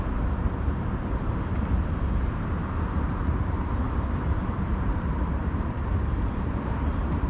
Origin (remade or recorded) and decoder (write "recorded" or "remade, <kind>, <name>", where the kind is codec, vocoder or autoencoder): remade, vocoder, BigVGAN v2